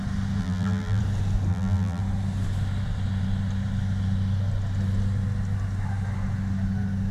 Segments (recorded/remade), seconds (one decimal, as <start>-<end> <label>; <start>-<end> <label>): 0.0-0.4 recorded; 0.4-1.0 remade; 1.0-1.5 recorded; 1.5-2.0 remade; 2.0-7.1 recorded